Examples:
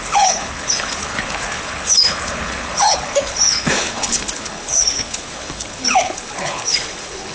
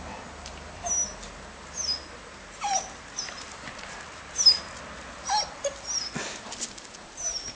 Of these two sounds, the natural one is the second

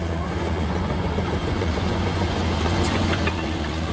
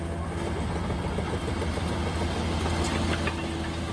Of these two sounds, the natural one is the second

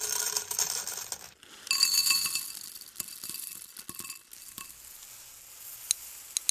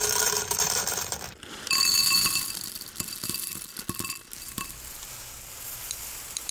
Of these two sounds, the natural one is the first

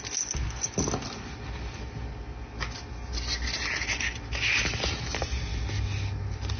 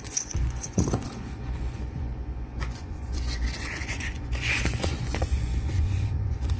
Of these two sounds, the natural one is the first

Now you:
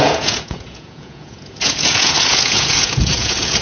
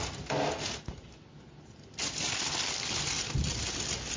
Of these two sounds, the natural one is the second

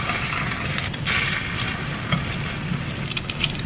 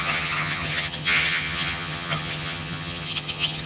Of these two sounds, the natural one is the first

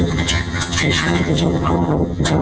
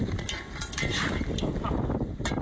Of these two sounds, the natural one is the second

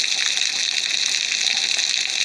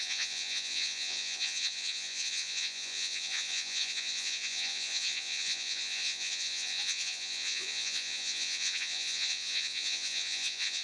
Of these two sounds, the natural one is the first